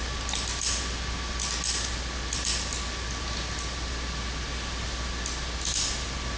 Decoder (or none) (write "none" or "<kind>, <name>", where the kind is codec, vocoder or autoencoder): none